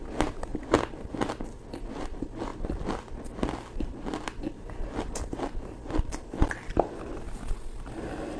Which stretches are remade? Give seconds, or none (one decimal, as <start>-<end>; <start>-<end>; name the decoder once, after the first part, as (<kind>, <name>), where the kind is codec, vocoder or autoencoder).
0.5-1.6 (vocoder, BigVGAN v2); 2.5-6.7